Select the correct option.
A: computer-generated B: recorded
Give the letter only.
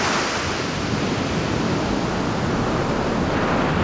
B